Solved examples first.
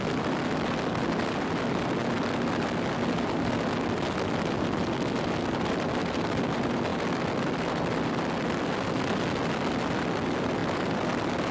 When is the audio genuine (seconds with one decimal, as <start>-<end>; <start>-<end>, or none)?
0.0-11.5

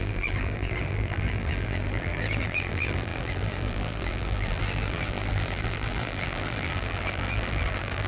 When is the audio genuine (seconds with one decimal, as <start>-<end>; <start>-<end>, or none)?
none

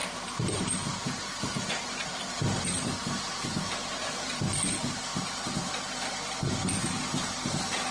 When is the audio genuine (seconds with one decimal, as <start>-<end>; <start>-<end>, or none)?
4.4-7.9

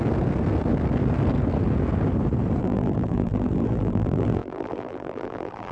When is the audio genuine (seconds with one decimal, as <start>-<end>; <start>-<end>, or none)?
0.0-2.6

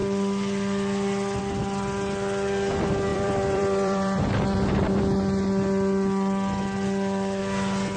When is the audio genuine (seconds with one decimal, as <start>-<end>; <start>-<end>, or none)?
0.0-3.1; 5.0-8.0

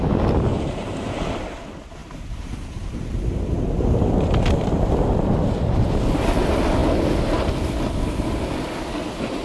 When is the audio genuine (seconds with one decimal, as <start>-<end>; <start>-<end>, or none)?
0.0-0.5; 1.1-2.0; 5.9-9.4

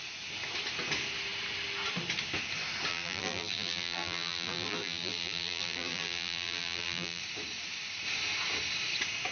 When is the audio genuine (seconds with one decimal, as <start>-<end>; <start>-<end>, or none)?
0.0-2.9; 7.2-9.3